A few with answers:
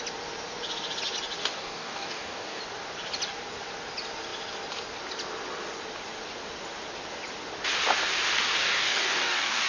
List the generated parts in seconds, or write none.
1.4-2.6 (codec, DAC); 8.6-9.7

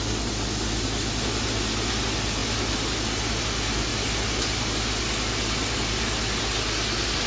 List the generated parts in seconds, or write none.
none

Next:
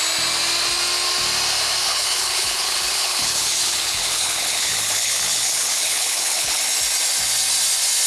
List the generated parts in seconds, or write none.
1.8-6.6 (codec, HILCodec)

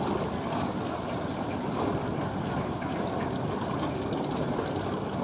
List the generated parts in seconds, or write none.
none

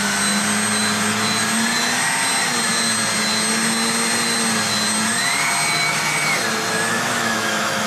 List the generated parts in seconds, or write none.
6.9-7.9 (autoencoder, DAC-VAE)